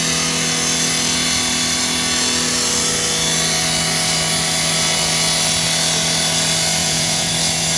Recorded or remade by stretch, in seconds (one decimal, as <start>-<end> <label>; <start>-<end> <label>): 0.0-6.8 recorded; 6.8-7.3 remade; 7.3-7.8 recorded